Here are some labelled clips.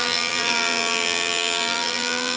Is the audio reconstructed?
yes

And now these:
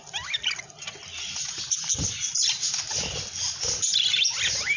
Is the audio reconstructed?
no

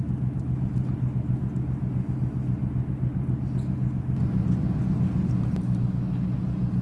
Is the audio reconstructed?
no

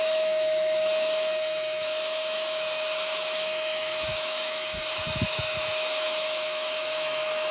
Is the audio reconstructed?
yes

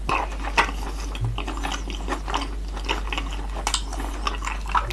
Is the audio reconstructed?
no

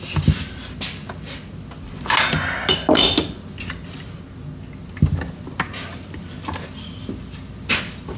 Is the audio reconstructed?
no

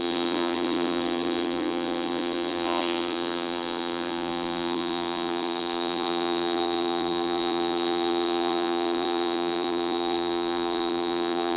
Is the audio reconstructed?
yes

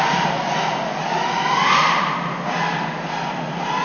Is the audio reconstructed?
no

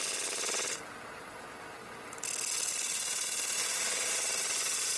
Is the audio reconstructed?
no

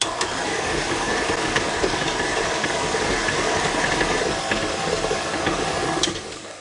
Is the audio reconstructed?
yes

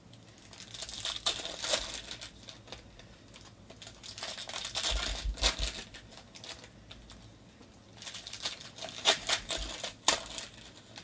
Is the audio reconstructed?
no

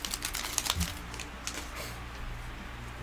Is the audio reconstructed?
no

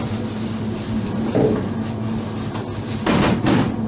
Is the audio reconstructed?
no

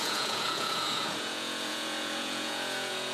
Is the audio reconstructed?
yes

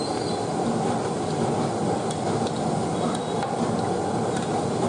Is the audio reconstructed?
no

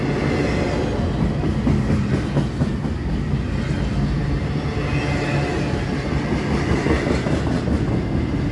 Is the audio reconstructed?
no